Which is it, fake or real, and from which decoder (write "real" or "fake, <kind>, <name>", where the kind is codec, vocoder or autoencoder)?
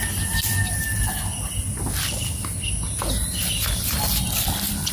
real